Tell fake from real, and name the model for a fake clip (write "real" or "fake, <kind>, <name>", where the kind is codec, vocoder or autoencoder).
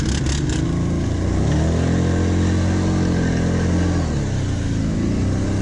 real